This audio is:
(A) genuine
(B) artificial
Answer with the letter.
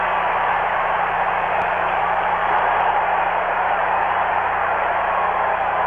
B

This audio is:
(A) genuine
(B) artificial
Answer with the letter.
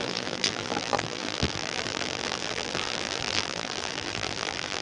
B